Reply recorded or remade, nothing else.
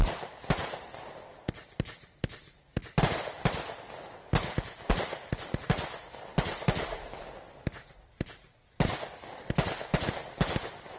recorded